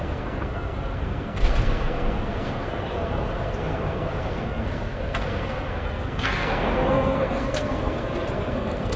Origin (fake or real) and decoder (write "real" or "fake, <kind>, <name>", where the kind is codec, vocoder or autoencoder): fake, codec, SNAC